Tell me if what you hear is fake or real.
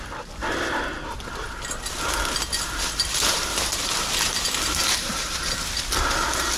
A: real